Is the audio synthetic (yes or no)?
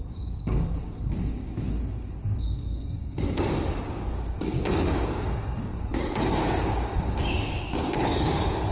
yes